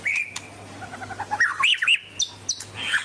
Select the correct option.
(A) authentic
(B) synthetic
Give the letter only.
A